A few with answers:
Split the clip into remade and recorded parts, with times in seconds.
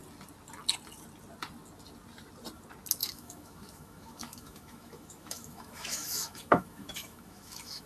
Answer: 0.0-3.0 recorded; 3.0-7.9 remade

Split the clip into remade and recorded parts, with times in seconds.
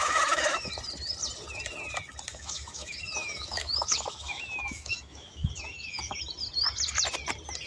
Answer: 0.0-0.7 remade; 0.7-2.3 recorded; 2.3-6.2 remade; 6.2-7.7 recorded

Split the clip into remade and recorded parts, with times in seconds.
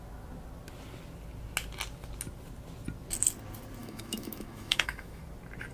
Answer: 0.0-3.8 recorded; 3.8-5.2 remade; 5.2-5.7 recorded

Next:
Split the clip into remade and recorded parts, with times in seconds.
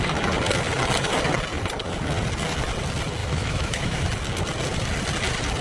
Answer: 0.0-3.2 recorded; 3.2-4.0 remade; 4.0-5.6 recorded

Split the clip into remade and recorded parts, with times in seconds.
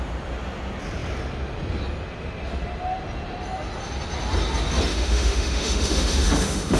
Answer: 0.0-4.9 recorded; 4.9-6.8 remade